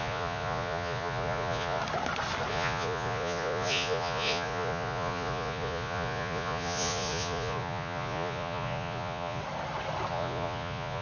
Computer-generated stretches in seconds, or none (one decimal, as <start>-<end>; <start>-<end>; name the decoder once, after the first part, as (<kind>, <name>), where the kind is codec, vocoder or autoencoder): 0.0-1.8 (vocoder, Vocos); 2.5-9.4; 10.1-11.0